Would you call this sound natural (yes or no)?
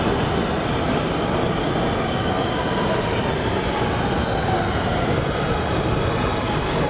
yes